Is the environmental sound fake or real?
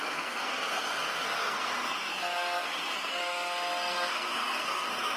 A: fake